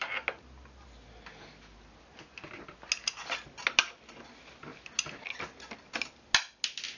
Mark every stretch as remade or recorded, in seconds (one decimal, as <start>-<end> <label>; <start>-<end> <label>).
0.0-7.0 recorded